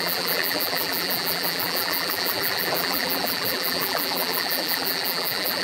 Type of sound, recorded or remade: remade